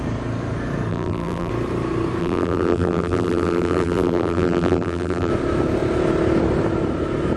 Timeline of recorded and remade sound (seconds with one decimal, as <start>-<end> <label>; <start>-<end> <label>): 0.0-0.9 recorded; 0.9-1.5 remade; 1.5-2.2 recorded; 2.2-5.3 remade; 5.3-7.4 recorded